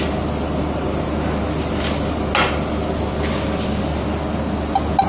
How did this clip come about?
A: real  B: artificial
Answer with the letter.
A